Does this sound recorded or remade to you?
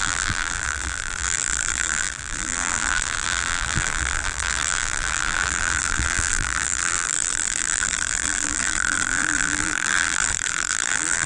remade